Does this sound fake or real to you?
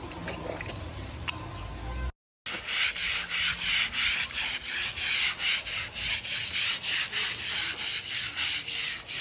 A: real